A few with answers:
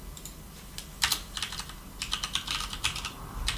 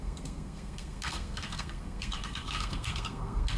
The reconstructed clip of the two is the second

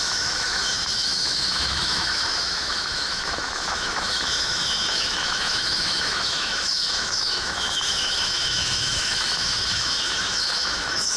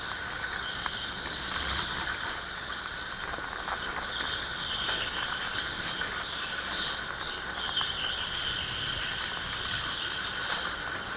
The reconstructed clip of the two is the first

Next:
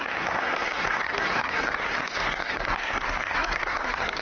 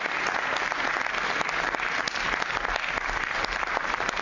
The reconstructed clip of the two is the first